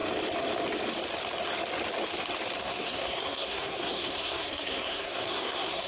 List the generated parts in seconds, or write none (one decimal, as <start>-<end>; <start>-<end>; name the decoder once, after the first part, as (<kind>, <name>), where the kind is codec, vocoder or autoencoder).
2.6-5.9 (codec, SNAC)